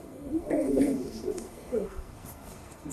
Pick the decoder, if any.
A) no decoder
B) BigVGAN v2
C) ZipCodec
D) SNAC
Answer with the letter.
D